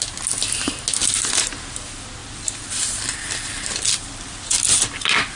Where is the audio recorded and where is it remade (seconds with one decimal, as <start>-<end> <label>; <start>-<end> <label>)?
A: 0.0-2.2 recorded; 2.2-5.4 remade